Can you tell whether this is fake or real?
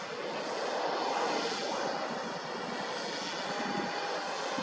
real